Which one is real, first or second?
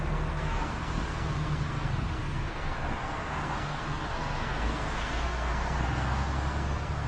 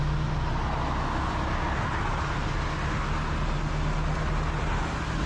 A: second